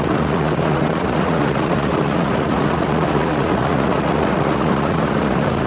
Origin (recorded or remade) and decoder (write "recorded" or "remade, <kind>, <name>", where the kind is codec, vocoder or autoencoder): remade, vocoder, Vocos